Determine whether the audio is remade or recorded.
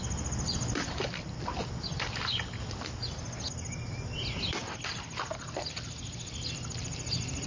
recorded